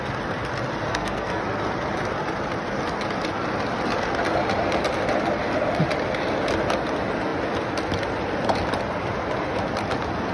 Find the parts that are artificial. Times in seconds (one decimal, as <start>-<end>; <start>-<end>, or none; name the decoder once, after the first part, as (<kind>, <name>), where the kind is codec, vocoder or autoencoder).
0.9-1.4 (codec, SNAC)